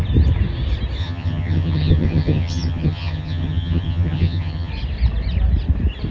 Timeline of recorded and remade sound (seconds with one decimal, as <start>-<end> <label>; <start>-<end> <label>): 0.0-1.0 recorded; 1.0-4.7 remade; 4.7-6.1 recorded